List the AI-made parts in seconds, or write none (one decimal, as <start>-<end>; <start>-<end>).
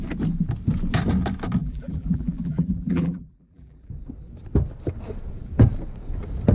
1.6-3.9